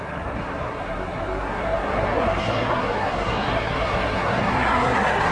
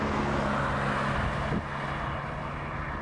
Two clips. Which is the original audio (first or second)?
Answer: second